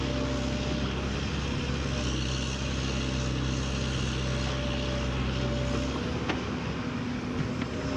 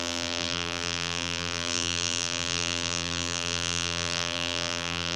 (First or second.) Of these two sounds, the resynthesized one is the second